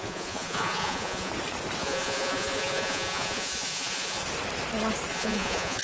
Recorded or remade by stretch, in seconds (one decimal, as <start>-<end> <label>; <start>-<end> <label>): 0.0-1.3 remade; 1.3-1.8 recorded; 1.8-4.2 remade; 4.2-5.1 recorded; 5.1-5.8 remade